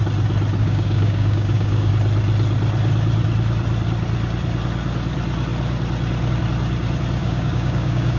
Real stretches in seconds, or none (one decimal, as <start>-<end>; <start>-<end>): 0.0-0.6; 1.9-7.2